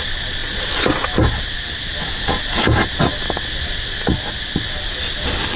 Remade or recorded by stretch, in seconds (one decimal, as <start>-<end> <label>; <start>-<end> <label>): 0.0-5.6 recorded